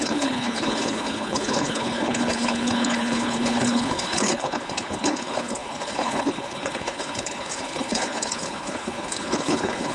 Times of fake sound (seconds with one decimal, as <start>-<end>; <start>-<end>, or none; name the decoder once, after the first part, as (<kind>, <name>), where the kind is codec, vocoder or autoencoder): 0.0-9.9 (codec, HILCodec)